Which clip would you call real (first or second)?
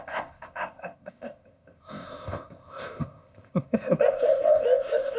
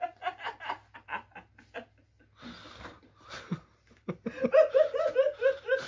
second